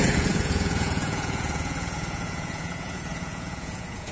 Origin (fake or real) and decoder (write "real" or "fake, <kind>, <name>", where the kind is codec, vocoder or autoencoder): fake, vocoder, Vocos